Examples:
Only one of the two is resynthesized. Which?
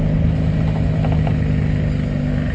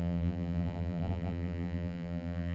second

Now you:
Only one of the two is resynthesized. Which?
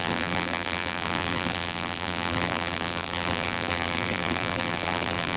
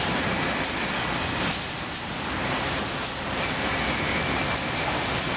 first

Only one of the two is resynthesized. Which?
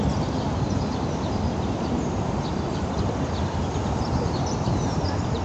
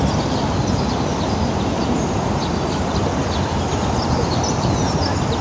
first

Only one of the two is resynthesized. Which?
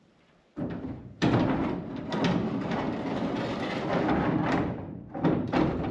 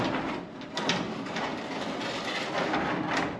first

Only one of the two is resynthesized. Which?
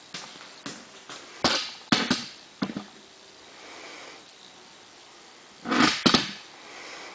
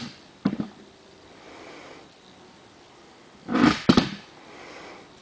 second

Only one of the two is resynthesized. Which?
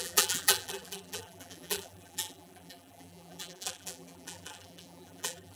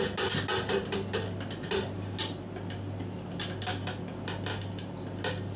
first